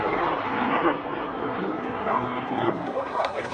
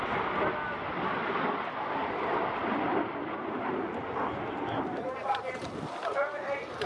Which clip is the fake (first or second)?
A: first